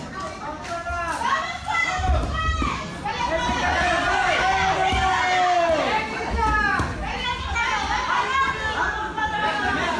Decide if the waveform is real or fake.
real